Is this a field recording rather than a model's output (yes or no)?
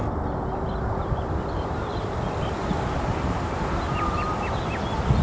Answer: yes